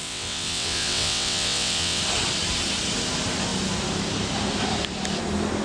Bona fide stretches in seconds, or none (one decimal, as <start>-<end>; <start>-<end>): 2.0-5.6